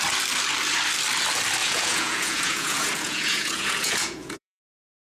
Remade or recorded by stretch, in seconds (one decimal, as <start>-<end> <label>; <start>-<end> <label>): 0.0-1.6 recorded; 1.6-4.6 remade; 4.6-5.0 recorded